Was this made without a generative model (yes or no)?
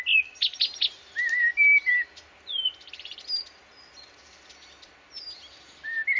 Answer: yes